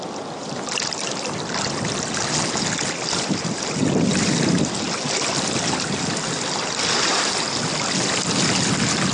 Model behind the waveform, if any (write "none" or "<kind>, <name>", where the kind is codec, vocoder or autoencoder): none